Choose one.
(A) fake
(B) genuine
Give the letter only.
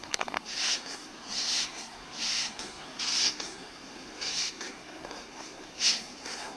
A